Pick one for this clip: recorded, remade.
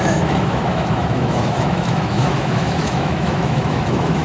remade